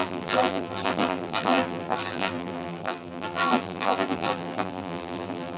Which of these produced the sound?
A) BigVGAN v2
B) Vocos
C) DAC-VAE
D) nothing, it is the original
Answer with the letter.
A